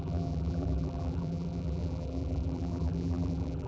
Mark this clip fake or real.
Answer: fake